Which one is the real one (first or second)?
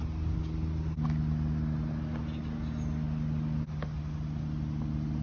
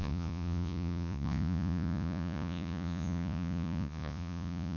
first